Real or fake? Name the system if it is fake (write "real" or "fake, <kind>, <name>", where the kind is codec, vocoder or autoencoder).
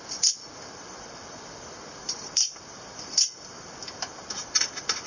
real